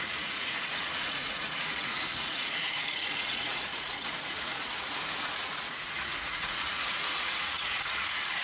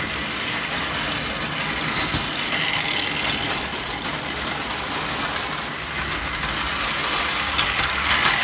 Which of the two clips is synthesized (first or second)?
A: first